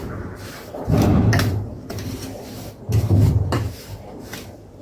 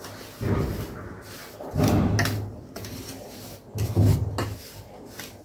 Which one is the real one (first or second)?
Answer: second